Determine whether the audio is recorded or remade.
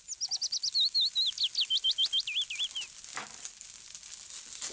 recorded